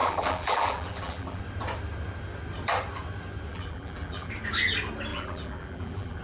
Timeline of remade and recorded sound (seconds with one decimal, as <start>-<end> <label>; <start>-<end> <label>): 0.0-1.4 remade; 1.4-3.5 recorded; 3.5-4.3 remade; 4.3-5.1 recorded; 5.1-6.2 remade